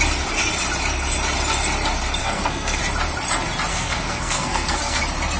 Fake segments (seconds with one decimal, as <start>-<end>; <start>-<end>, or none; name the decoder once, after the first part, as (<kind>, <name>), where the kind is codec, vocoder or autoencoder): 2.2-2.8 (codec, SNAC); 3.7-5.0